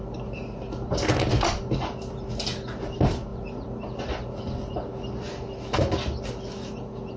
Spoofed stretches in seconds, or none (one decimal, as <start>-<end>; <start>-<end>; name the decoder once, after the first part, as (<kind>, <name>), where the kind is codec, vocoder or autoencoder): none

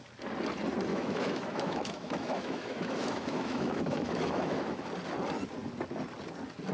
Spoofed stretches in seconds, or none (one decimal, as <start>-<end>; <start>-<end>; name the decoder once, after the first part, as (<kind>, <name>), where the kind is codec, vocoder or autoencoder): 0.9-4.9 (autoencoder, DAC-VAE)

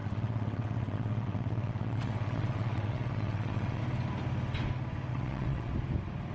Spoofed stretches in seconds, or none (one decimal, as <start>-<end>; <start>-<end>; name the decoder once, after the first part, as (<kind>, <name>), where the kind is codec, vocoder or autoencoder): 0.0-3.8 (vocoder, WaveNeXt); 5.1-5.7

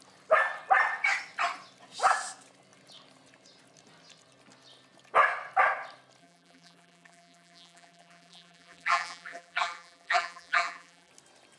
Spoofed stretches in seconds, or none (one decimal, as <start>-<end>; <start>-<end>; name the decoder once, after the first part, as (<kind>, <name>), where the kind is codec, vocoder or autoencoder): 6.2-11.1 (vocoder, BigVGAN v2)

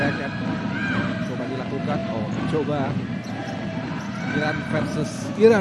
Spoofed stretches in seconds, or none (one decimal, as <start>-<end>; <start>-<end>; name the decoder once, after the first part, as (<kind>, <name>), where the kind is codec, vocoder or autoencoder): none

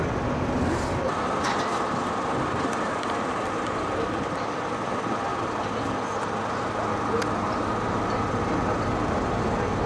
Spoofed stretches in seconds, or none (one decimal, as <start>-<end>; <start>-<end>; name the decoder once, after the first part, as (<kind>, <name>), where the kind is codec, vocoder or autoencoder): none